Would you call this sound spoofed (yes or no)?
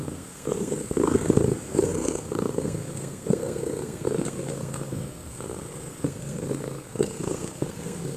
yes